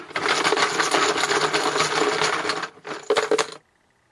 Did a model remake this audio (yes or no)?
no